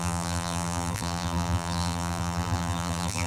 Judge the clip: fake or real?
fake